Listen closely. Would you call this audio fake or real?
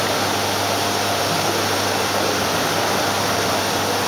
fake